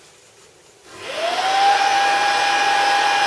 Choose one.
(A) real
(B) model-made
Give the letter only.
A